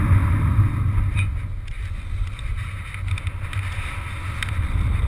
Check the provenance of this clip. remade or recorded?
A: recorded